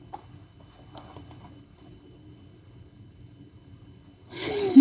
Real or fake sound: fake